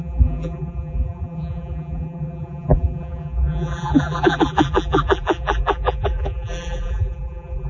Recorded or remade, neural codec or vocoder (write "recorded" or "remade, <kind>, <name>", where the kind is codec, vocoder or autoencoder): remade, vocoder, BigVGAN v2